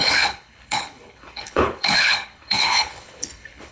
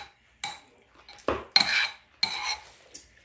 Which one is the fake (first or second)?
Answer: first